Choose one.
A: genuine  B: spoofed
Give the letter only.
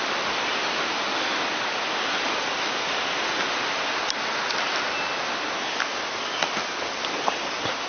A